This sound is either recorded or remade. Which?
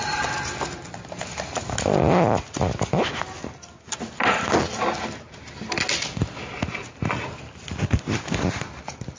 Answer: recorded